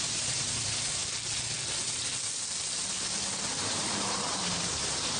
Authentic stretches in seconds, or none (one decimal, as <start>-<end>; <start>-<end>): 1.0-3.6